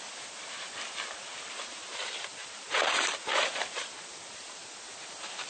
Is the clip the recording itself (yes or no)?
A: yes